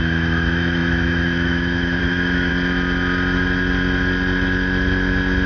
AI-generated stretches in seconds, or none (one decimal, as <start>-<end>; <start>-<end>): 0.0-2.5